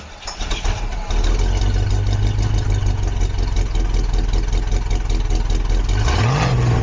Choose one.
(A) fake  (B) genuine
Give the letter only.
B